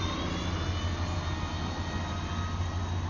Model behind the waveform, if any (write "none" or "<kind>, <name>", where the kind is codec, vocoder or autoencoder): none